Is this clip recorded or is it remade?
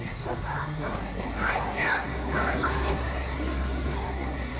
remade